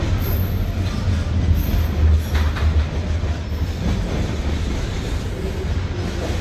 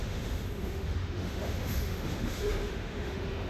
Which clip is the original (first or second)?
first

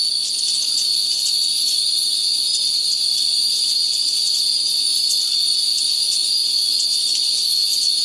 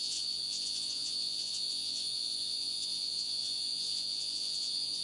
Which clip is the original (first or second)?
first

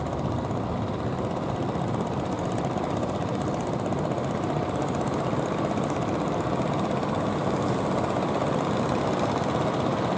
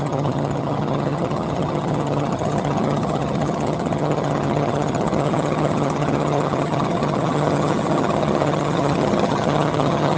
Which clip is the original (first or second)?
first